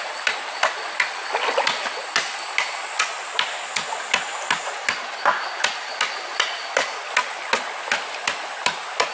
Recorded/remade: recorded